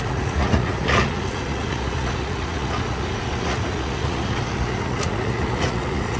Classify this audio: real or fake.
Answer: fake